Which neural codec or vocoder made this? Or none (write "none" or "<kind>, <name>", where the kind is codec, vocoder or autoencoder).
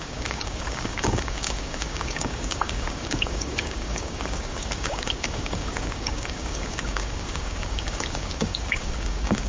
codec, DAC